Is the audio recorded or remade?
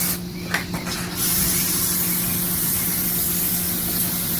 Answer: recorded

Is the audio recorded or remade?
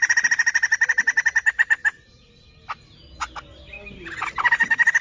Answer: recorded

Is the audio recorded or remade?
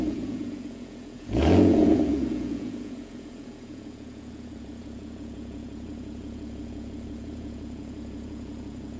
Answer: remade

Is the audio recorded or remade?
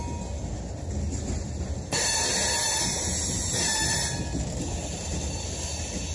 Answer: recorded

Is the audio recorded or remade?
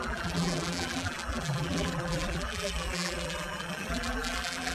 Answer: remade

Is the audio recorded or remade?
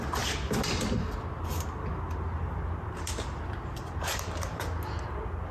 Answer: recorded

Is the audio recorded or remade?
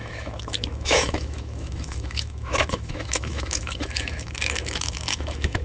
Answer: remade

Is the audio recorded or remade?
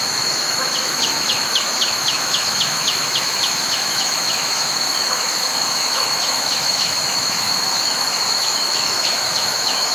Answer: remade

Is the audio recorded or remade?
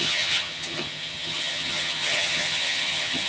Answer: remade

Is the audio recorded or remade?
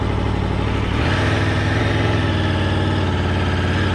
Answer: recorded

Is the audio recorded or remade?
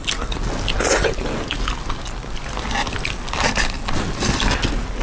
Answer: recorded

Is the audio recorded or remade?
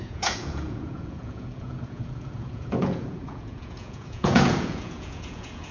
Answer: remade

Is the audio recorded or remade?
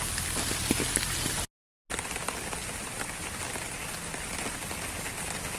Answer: recorded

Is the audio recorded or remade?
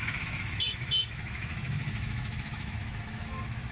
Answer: remade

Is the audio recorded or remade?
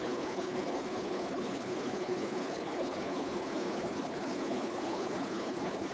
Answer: remade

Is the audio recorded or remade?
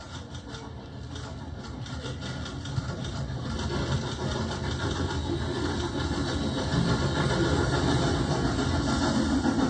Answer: recorded